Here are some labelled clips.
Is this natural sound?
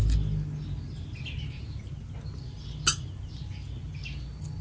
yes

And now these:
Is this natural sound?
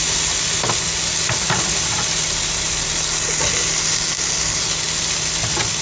yes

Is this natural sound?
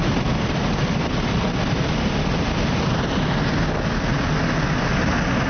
yes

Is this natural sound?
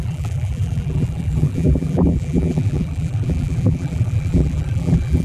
no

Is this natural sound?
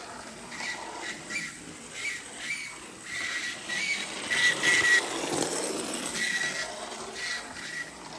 yes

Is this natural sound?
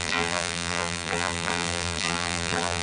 no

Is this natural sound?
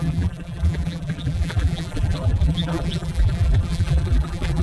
no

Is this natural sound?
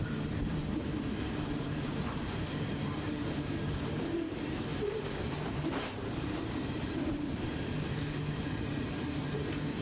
no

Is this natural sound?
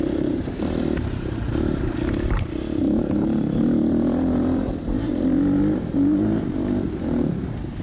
no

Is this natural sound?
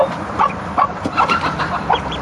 no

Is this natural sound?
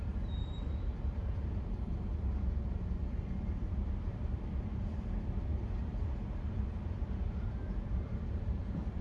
no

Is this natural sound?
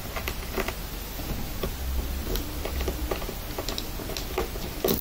yes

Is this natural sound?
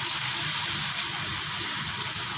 no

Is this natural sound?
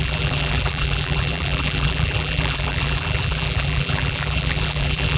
no